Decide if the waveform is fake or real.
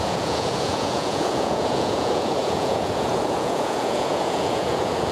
fake